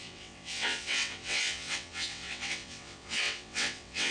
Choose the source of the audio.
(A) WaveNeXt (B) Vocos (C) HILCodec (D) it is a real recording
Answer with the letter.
A